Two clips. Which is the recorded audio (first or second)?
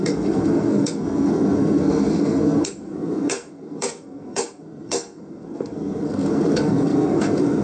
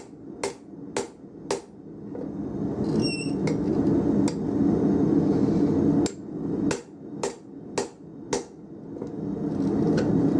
second